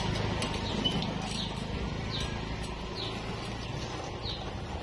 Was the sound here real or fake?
real